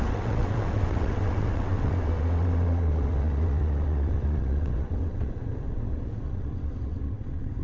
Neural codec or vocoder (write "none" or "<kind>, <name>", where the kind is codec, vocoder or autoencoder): vocoder, WaveNeXt